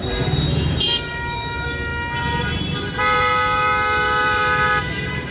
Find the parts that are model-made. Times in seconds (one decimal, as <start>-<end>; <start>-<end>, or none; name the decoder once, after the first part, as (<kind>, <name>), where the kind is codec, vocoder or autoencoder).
0.7-5.3 (vocoder, BigVGAN v2)